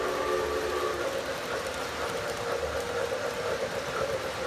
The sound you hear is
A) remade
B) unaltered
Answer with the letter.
B